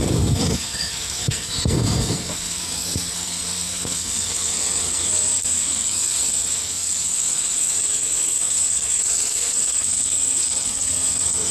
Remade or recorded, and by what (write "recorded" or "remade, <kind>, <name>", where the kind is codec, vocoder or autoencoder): remade, codec, SNAC